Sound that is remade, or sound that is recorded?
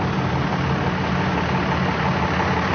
recorded